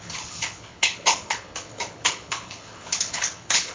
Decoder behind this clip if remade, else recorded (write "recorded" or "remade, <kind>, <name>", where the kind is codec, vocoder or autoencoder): remade, codec, HILCodec